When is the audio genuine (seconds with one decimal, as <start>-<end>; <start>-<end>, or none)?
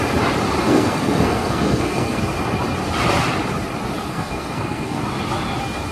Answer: 0.0-0.6; 2.2-4.1; 5.0-5.9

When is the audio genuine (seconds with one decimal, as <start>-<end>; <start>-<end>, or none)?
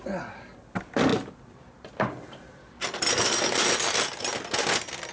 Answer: 0.0-5.1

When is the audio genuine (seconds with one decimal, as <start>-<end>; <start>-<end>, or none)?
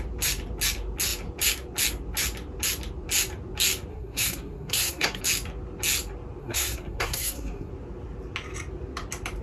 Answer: 0.0-3.9; 5.2-6.4; 7.7-9.4